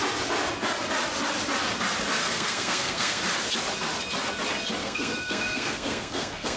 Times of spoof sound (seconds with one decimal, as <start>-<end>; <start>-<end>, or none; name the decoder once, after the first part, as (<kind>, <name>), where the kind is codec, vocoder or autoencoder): 2.2-3.2 (codec, SNAC); 4.8-6.6